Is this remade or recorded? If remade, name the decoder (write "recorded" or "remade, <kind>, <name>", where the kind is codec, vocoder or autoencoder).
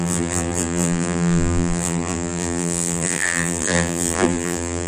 remade, vocoder, BigVGAN v2